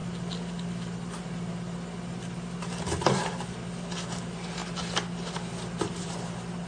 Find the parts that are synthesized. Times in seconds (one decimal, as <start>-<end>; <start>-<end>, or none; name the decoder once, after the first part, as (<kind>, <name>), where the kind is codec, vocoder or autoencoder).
none